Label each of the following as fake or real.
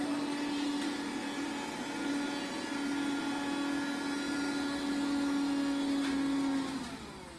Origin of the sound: real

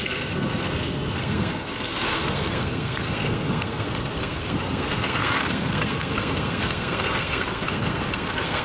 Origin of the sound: fake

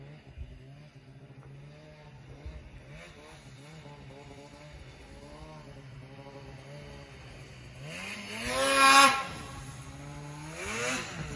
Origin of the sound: real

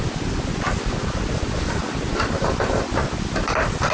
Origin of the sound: real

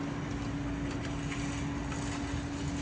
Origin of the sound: real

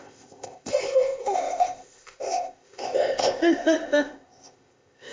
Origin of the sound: fake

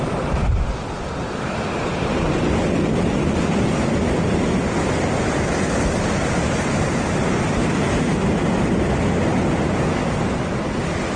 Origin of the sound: real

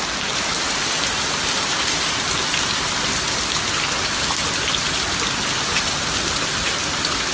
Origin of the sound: real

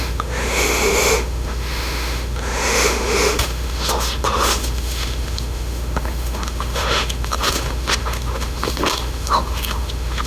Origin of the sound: fake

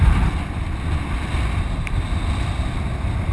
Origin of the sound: real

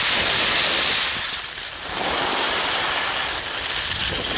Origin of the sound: real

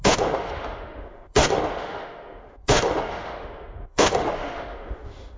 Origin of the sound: fake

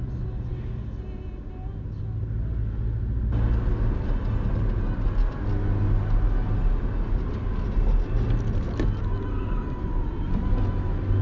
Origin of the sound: real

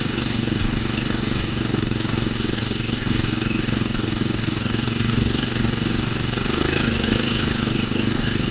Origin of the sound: fake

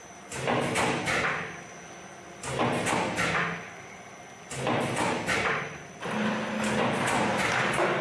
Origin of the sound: real